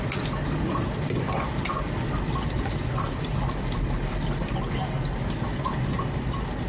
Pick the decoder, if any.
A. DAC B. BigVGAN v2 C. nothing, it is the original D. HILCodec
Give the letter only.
C